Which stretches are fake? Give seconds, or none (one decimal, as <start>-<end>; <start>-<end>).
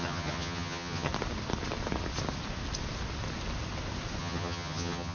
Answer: 0.0-1.1; 4.2-5.1